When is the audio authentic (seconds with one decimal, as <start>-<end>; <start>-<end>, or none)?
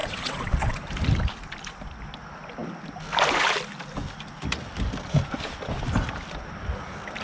0.8-7.2